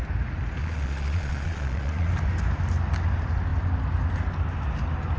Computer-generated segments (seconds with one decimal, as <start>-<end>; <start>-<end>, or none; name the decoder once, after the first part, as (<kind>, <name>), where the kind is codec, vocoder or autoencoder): 0.6-2.1 (vocoder, Vocos)